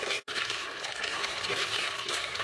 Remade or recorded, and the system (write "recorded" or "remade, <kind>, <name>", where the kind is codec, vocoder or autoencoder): remade, codec, SNAC